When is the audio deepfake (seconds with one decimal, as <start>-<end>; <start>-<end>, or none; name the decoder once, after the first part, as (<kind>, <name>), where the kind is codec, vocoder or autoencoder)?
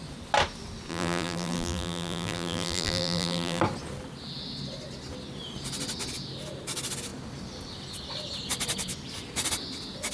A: 0.9-3.6 (vocoder, BigVGAN v2)